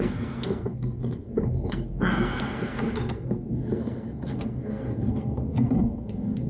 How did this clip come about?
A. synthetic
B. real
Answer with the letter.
A